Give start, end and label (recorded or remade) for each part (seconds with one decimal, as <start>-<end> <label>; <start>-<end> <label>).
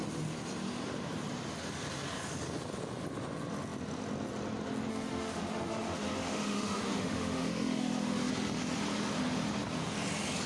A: 0.0-4.9 recorded; 4.9-8.3 remade; 8.3-10.5 recorded